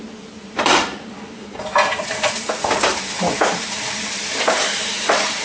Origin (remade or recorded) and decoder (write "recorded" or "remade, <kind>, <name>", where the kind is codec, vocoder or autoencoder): remade, vocoder, BigVGAN v2